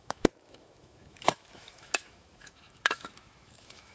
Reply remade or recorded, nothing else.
remade